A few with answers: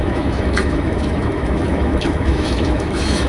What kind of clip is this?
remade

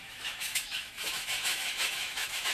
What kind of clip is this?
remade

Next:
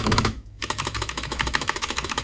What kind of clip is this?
remade